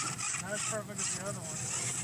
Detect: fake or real real